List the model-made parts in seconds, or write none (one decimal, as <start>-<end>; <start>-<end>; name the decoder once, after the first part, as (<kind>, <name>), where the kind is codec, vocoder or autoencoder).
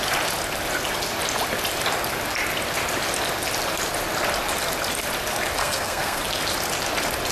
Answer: 5.6-6.2 (codec, SNAC)